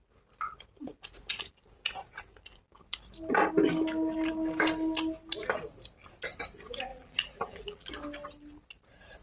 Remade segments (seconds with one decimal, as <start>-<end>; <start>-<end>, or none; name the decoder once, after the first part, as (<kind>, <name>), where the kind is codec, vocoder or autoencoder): 6.9-7.9 (vocoder, BigVGAN v2)